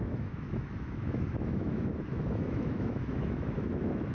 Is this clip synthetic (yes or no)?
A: yes